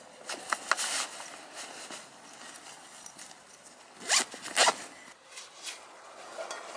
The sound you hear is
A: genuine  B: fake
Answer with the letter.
A